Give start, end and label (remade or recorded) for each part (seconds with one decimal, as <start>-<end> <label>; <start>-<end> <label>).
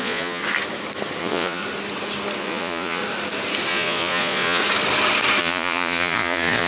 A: 0.0-0.4 remade; 0.4-1.2 recorded; 1.2-1.6 remade; 1.6-2.4 recorded; 2.4-3.0 remade; 3.0-3.7 recorded; 3.7-4.6 remade; 4.6-5.4 recorded; 5.4-6.7 remade